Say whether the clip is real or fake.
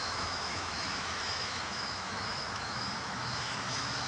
fake